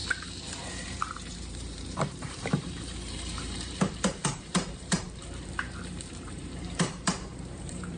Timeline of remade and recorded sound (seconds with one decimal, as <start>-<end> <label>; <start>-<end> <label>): 0.0-0.7 recorded; 0.7-8.0 remade